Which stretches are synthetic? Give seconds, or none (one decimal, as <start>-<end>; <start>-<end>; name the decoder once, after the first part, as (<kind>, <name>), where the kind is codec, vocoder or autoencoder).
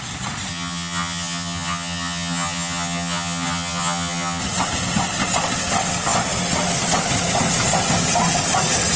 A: 0.5-4.4 (vocoder, HiFi-GAN)